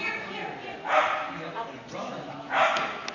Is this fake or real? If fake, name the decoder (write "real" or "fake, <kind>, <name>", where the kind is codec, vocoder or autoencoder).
real